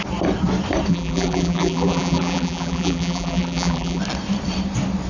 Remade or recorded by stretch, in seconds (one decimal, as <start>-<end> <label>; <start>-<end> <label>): 0.0-0.9 recorded; 0.9-4.0 remade; 4.0-5.1 recorded